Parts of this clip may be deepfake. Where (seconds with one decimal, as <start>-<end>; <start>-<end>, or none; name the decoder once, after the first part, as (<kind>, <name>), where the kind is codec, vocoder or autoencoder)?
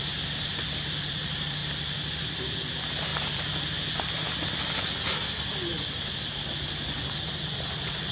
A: none